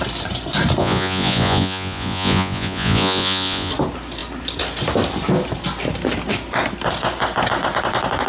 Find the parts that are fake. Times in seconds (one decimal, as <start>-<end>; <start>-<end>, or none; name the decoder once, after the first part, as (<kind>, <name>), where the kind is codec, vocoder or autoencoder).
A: 0.8-3.7 (vocoder, Vocos)